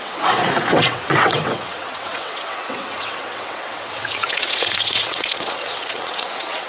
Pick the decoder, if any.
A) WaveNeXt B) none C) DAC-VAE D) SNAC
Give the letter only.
A